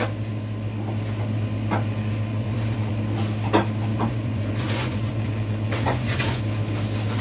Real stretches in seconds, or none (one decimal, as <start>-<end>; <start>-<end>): 0.0-2.3; 2.9-3.9; 6.4-7.2